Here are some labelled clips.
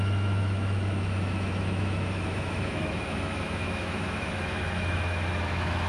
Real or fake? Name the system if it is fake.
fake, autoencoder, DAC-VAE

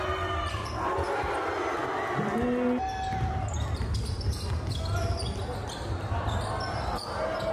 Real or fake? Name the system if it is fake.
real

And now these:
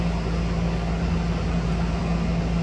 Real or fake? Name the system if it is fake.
real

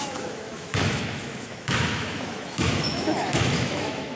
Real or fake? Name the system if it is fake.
fake, autoencoder, DAC-VAE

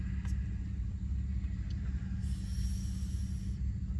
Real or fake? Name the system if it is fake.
real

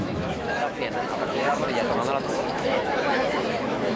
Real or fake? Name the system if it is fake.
fake, autoencoder, DAC-VAE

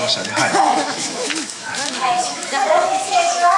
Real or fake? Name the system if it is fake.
fake, autoencoder, DAC-VAE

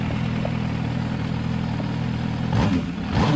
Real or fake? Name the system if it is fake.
real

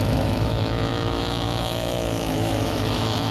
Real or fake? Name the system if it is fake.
fake, autoencoder, DAC-VAE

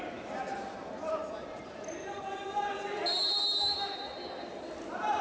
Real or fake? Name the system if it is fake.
real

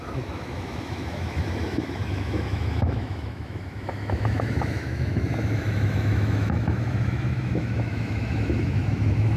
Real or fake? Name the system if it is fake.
fake, autoencoder, DAC-VAE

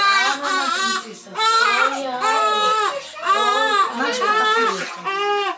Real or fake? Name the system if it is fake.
real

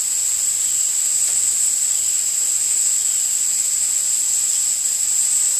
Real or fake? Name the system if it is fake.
real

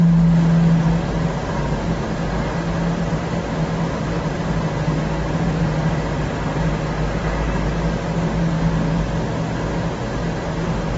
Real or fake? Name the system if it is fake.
real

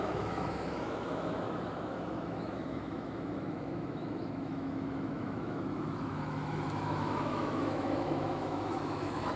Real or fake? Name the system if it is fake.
fake, autoencoder, DAC-VAE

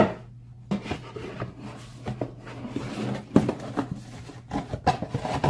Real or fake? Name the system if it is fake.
real